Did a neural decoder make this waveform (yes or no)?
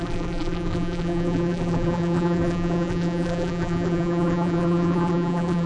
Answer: yes